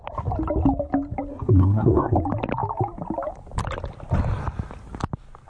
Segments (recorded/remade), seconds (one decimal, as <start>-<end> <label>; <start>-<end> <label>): 0.0-1.3 recorded; 1.3-2.2 remade; 2.2-5.5 recorded